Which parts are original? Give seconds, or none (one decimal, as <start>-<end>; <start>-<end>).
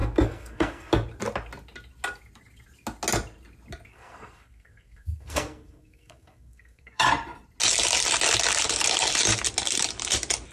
0.9-3.9; 7.1-10.5